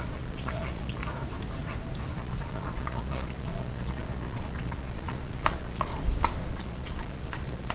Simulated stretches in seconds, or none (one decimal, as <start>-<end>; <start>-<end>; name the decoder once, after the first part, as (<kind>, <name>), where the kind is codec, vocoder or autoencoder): 0.0-1.0 (vocoder, Vocos); 2.1-5.9; 6.5-7.7